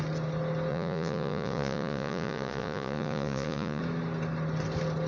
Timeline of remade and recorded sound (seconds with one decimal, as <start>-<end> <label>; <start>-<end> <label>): 0.0-0.7 recorded; 0.7-3.8 remade; 3.8-5.1 recorded